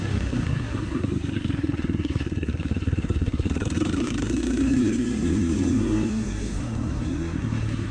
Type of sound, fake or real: fake